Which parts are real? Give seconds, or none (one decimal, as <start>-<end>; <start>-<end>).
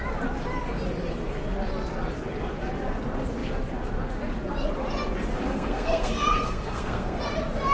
0.0-5.5; 7.2-7.7